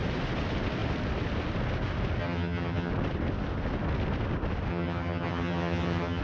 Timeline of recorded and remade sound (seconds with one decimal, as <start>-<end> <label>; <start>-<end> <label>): 0.0-2.2 recorded; 2.2-2.9 remade; 2.9-4.7 recorded; 4.7-6.2 remade